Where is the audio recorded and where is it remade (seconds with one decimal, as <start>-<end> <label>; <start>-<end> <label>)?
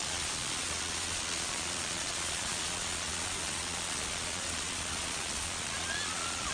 0.0-6.5 remade